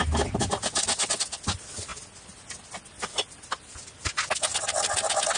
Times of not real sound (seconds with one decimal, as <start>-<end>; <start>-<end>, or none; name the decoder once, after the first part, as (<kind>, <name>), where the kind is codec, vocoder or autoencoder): none